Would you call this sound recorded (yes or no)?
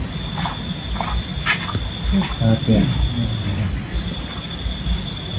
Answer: yes